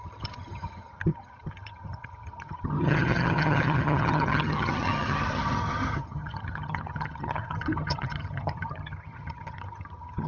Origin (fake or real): fake